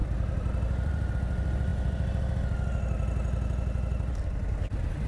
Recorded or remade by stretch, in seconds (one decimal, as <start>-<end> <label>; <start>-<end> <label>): 0.0-1.1 remade; 1.1-5.1 recorded

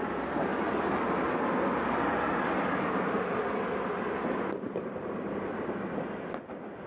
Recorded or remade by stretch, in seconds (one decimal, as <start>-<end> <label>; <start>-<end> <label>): 0.0-6.9 recorded

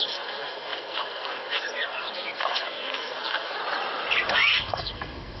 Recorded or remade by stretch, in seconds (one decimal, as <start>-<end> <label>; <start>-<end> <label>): 0.0-3.6 remade; 3.6-4.3 recorded; 4.3-5.4 remade

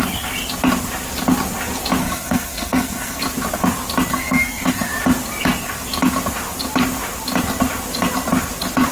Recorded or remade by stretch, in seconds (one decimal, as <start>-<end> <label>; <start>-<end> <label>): 0.0-2.0 recorded; 2.0-3.2 remade; 3.2-4.1 recorded; 4.1-4.9 remade; 4.9-8.9 recorded

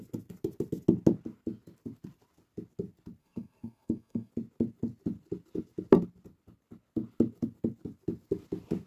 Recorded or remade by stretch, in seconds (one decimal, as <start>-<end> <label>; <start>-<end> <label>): 0.0-3.2 recorded; 3.2-4.3 remade; 4.3-8.9 recorded

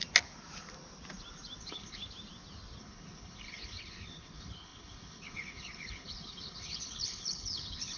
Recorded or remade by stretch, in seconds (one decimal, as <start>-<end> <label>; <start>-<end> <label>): 0.0-1.6 recorded; 1.6-2.0 remade; 2.0-2.8 recorded; 2.8-8.0 remade

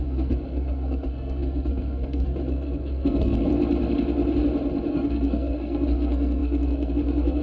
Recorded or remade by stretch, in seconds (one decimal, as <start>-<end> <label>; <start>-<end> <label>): 0.0-3.5 remade; 3.5-4.9 recorded; 4.9-7.4 remade

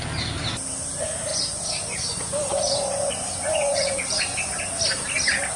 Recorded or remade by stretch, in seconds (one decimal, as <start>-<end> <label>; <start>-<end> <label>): 0.0-1.3 recorded; 1.3-4.6 remade; 4.6-5.6 recorded